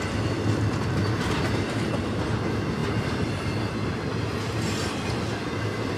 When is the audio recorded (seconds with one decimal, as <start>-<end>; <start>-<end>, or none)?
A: 0.0-6.0